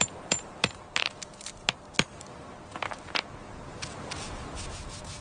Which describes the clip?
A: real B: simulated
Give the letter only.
B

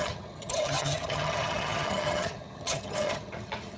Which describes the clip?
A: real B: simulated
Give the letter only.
B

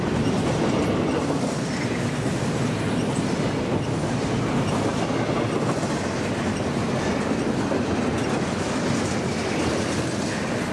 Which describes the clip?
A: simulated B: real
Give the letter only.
B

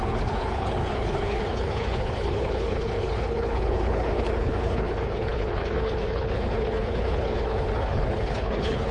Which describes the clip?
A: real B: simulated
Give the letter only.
B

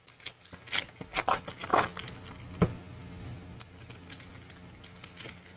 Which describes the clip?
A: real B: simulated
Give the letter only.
A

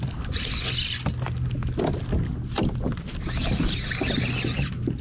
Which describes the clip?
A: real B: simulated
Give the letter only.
A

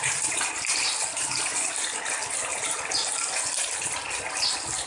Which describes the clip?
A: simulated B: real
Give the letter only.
B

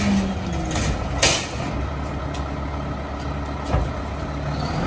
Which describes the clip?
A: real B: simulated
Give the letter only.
A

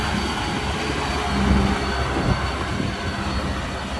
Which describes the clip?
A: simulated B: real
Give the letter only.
B